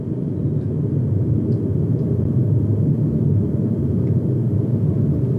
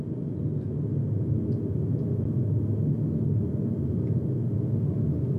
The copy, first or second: first